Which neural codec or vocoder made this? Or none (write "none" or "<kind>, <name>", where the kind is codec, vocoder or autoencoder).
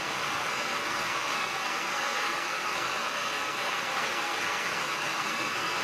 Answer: codec, SNAC